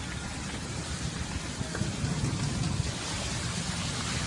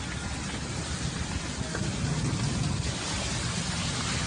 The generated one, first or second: first